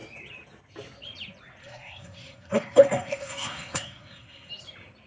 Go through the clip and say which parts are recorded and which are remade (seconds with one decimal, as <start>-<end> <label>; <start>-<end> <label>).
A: 0.0-1.6 recorded; 1.6-4.5 remade; 4.5-5.1 recorded

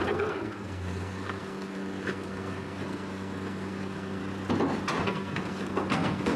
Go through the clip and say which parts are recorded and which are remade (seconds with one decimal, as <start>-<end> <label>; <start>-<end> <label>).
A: 0.0-4.2 remade; 4.2-5.0 recorded; 5.0-6.4 remade